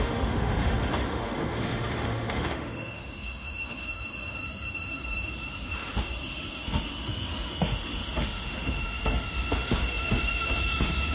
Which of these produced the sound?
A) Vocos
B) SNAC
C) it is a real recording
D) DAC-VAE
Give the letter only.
D